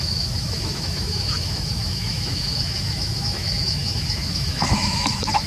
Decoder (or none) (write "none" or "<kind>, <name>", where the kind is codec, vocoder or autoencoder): autoencoder, DAC-VAE